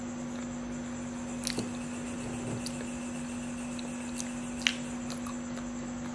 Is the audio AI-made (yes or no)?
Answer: no